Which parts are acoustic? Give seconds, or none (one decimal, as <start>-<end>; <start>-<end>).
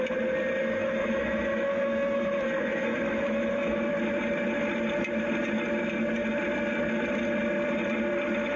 0.0-0.6; 3.9-8.6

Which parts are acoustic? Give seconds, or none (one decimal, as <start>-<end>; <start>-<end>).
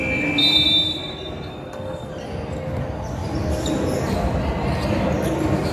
0.0-1.5; 2.1-5.7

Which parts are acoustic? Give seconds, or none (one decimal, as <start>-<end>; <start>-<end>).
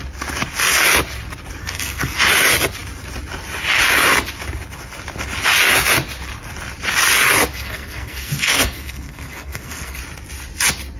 0.0-1.6; 2.2-7.5; 10.0-11.0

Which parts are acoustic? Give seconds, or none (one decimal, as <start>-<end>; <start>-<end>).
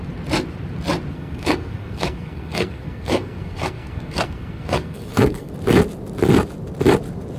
0.0-1.1; 5.5-7.4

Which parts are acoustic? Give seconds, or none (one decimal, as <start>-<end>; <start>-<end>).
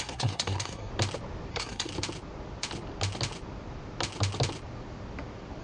0.9-1.5; 1.9-5.6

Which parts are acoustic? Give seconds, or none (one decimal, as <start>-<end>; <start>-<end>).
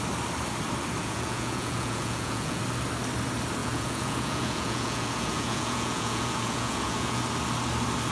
0.0-1.0; 2.6-3.6; 7.2-8.1